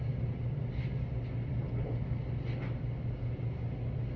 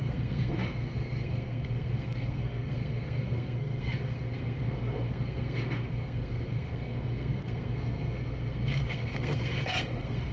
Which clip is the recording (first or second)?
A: first